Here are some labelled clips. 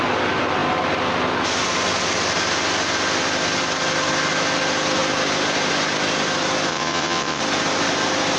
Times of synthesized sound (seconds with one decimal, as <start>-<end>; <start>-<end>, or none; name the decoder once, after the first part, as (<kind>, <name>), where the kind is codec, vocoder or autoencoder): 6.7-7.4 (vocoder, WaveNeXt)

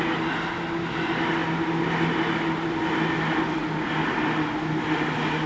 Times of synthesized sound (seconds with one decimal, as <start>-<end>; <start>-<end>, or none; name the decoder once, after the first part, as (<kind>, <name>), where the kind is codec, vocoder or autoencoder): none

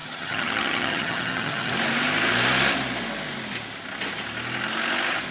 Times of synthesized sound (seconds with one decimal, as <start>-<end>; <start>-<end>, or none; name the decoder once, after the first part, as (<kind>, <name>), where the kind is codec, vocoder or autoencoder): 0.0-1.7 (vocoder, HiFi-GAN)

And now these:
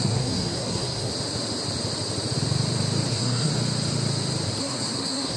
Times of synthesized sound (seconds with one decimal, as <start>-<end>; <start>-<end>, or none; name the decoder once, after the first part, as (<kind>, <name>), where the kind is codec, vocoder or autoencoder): 0.0-1.1 (codec, SNAC); 3.1-3.5; 4.6-5.4

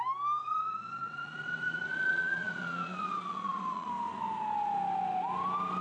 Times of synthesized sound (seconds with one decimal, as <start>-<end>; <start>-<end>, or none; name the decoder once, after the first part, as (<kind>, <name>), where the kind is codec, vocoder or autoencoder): 0.4-3.9 (vocoder, Vocos)

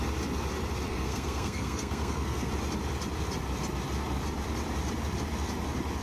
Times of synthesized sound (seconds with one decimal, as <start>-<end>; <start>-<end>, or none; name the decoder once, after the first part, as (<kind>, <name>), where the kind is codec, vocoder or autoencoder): 0.9-2.5 (codec, SNAC)